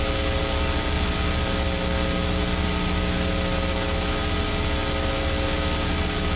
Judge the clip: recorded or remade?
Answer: recorded